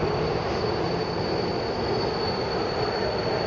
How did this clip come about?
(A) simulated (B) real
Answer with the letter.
B